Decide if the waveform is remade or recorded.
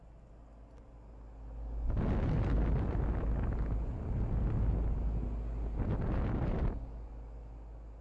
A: recorded